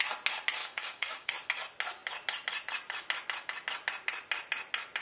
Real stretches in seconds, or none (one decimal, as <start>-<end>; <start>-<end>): 0.0-0.6; 1.3-5.0